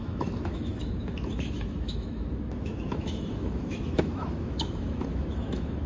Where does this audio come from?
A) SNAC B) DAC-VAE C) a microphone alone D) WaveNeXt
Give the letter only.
B